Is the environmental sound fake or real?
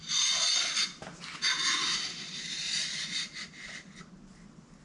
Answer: real